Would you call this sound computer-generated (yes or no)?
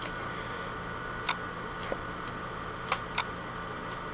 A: no